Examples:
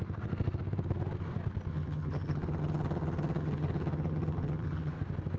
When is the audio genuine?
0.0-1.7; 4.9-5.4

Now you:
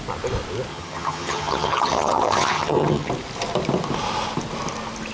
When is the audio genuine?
0.0-0.7; 3.1-5.1

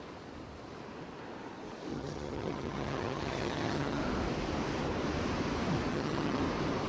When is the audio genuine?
0.0-1.9; 4.0-5.9; 6.4-6.9

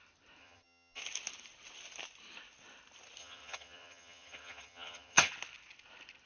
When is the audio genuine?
0.0-0.4; 1.0-3.2; 5.3-6.3

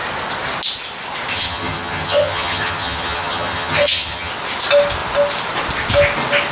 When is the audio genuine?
0.0-1.3; 4.3-6.5

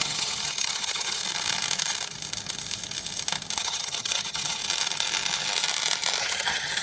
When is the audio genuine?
1.2-3.6; 4.6-6.2